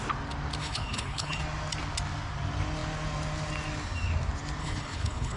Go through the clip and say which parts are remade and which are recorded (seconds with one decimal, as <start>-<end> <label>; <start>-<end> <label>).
0.0-0.6 recorded; 0.6-1.4 remade; 1.4-4.6 recorded; 4.6-5.4 remade